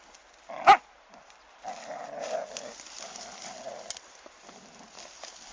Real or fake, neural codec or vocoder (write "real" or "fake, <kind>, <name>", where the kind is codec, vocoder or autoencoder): real